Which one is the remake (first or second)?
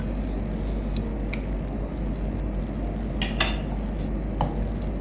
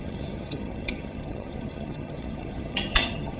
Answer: second